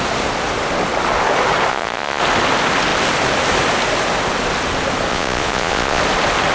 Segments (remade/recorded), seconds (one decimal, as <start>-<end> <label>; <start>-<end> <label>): 0.0-1.7 recorded; 1.7-2.2 remade; 2.2-5.1 recorded; 5.1-6.0 remade; 6.0-6.5 recorded

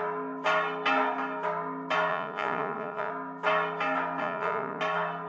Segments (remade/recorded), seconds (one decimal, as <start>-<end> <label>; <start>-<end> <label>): 0.0-2.1 recorded; 2.1-3.1 remade; 3.1-4.2 recorded; 4.2-4.8 remade; 4.8-5.3 recorded